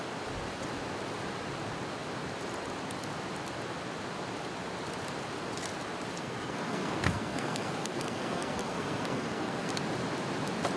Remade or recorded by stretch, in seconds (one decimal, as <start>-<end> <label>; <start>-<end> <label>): 0.0-6.2 recorded; 6.2-9.7 remade; 9.7-10.8 recorded